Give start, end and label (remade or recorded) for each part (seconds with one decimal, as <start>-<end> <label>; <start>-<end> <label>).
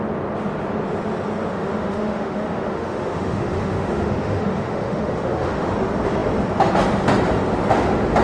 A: 0.0-1.5 recorded; 1.5-5.7 remade; 5.7-8.2 recorded